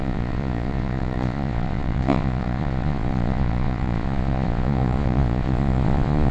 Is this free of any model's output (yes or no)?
no